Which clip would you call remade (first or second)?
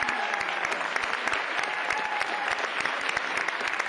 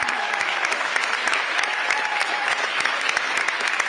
second